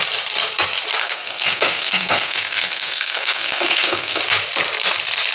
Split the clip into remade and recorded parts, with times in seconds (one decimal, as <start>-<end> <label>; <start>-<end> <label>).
0.0-1.0 recorded; 1.0-4.2 remade; 4.2-5.3 recorded